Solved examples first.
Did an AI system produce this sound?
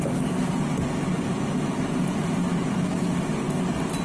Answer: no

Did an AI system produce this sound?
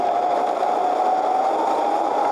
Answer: no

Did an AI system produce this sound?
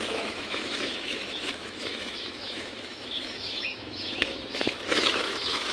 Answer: yes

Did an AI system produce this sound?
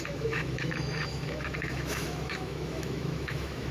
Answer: yes